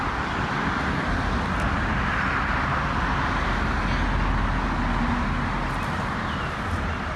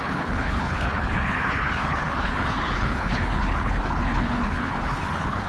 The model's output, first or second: second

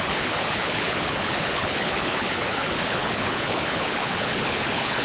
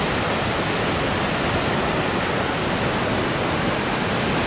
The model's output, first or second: first